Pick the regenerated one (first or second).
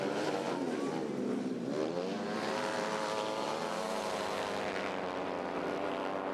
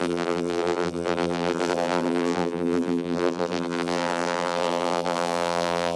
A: second